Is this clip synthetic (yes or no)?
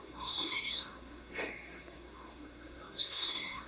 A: yes